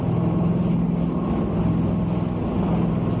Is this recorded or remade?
recorded